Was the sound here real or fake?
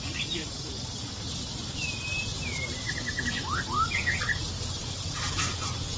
real